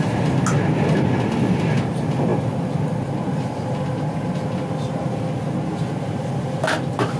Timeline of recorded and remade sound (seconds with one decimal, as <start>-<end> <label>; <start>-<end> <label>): 0.0-2.3 recorded; 2.3-5.2 remade; 5.2-7.2 recorded